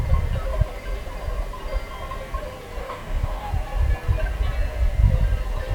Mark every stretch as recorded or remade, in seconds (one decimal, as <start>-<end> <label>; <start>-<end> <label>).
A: 0.0-2.8 recorded; 2.8-3.5 remade; 3.5-5.7 recorded